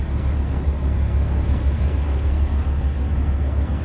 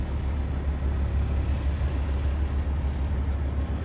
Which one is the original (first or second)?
second